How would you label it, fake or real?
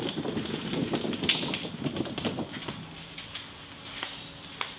real